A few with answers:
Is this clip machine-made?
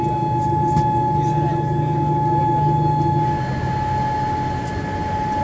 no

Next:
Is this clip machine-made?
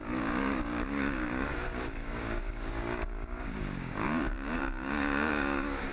yes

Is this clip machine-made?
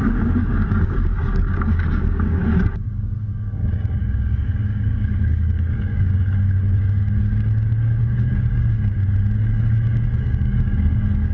yes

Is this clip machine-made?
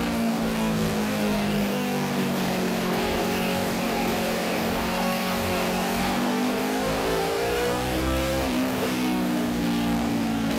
yes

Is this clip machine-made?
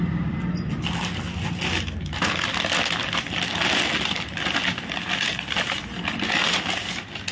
no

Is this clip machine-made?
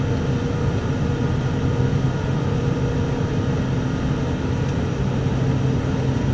no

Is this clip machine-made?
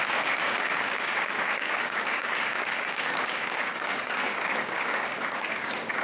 yes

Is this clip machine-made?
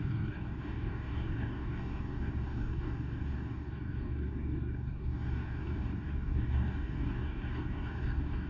yes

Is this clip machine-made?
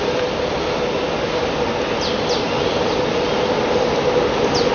no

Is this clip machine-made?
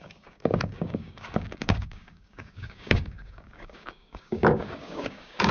yes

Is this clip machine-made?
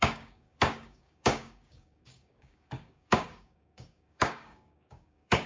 yes